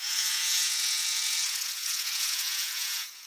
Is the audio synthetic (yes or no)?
yes